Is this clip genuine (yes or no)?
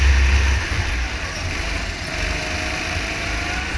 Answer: yes